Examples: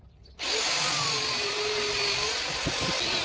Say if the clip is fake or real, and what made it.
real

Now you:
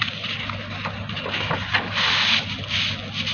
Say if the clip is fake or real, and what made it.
real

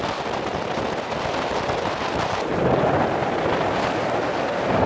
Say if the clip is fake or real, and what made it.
real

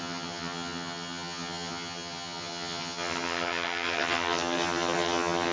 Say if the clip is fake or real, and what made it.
fake, vocoder, HiFi-GAN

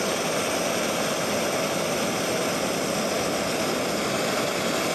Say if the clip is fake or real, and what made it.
real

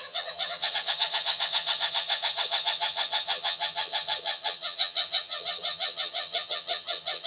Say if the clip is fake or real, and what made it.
fake, vocoder, HiFi-GAN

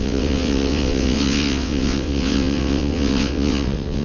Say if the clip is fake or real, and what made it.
fake, vocoder, WaveNeXt